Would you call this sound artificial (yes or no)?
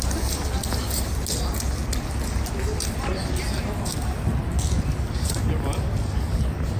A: no